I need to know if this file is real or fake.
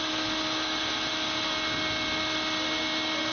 real